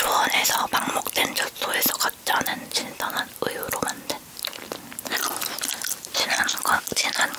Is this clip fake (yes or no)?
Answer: yes